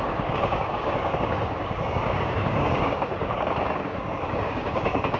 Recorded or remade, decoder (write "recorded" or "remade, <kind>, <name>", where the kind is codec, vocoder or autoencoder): remade, codec, DAC